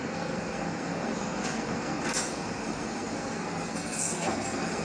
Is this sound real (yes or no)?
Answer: no